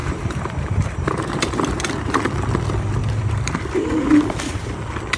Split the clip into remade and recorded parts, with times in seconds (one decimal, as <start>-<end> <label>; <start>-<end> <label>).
0.0-2.2 remade; 2.2-3.0 recorded; 3.0-3.6 remade; 3.6-5.2 recorded